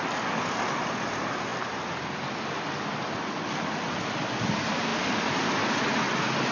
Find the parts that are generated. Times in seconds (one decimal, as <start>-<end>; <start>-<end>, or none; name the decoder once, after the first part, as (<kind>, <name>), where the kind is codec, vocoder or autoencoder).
none